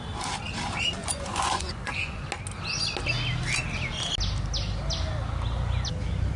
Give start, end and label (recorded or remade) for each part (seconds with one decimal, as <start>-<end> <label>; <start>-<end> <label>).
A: 0.0-1.0 recorded; 1.0-2.3 remade; 2.3-6.4 recorded